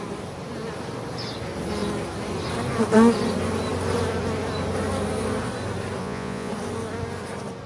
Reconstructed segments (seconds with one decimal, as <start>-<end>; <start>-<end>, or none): 6.0-6.5